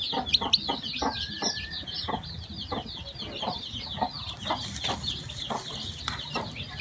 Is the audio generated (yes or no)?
no